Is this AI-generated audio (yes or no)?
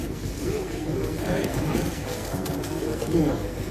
yes